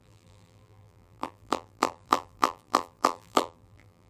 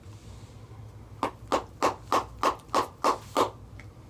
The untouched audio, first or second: second